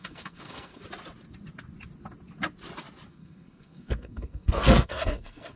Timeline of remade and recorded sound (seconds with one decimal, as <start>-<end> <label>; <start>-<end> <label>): 0.0-0.8 remade; 0.8-3.1 recorded; 3.1-5.6 remade

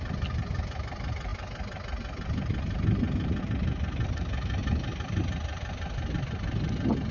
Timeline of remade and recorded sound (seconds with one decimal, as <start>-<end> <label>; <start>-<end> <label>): 0.0-7.1 recorded

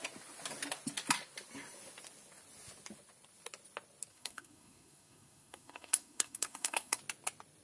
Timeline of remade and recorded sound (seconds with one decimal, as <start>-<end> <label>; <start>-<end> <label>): 0.0-4.1 recorded; 4.1-7.0 remade; 7.0-7.6 recorded

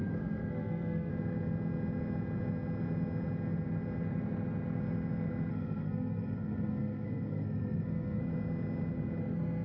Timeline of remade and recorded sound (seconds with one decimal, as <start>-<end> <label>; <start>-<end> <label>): 0.0-1.1 remade; 1.1-5.5 recorded; 5.5-8.2 remade; 8.2-9.2 recorded; 9.2-9.6 remade

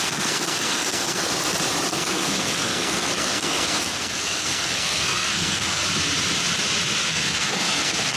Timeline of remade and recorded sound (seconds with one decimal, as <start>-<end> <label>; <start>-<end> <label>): 0.0-1.3 remade; 1.3-1.9 recorded; 1.9-5.8 remade; 5.8-7.1 recorded; 7.1-8.2 remade

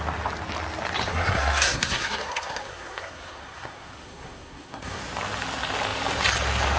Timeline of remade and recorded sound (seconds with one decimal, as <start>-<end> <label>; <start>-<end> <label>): 0.0-1.1 recorded; 1.1-5.0 remade; 5.0-6.8 recorded

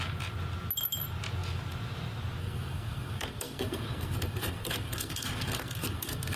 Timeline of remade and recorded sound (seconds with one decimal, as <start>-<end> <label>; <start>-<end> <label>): 0.0-2.4 recorded; 2.4-6.4 remade